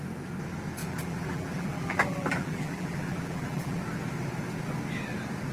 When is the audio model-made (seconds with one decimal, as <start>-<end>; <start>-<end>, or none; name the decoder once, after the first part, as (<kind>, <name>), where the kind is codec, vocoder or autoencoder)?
0.8-3.8 (vocoder, BigVGAN v2)